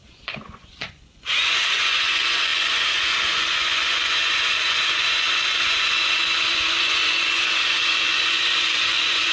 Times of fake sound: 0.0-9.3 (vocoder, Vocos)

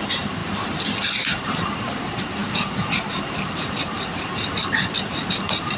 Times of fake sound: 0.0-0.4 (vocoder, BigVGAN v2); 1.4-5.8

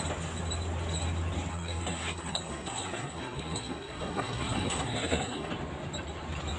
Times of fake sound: 1.5-5.5 (codec, SNAC)

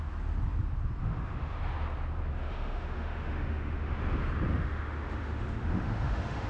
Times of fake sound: 1.0-1.6 (autoencoder, DAC-VAE); 2.4-4.0; 4.5-6.5

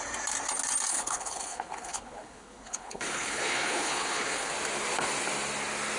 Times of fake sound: 0.9-4.5 (codec, HILCodec)

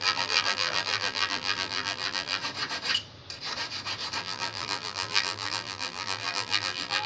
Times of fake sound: 0.0-2.4 (vocoder, BigVGAN v2); 4.2-7.1